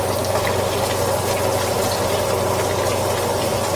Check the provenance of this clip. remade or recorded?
recorded